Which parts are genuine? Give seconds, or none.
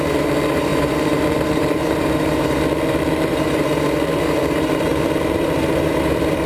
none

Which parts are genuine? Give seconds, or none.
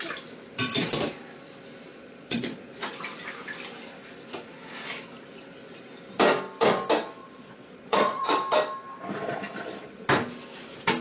0.0-1.9; 2.7-7.2; 8.3-11.0